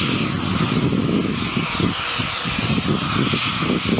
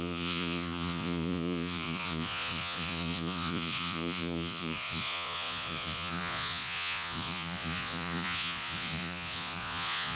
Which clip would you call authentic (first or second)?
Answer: first